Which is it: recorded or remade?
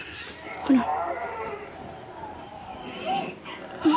recorded